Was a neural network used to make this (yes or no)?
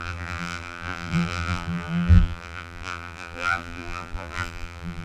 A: yes